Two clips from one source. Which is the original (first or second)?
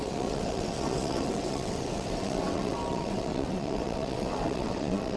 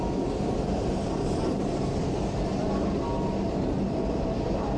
second